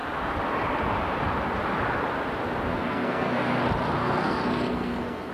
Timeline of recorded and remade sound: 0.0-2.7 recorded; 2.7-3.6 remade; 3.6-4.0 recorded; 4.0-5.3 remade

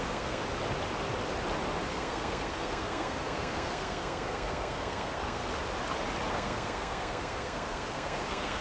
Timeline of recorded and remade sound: 0.0-0.4 remade; 0.4-1.9 recorded; 1.9-5.4 remade; 5.4-6.3 recorded; 6.3-8.6 remade

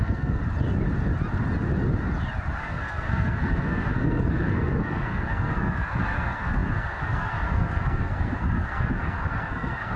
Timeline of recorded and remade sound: 0.0-0.4 remade; 0.4-2.6 recorded; 2.6-10.0 remade

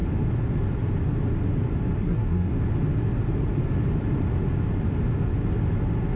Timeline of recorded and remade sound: 0.0-2.0 recorded; 2.0-2.5 remade; 2.5-6.2 recorded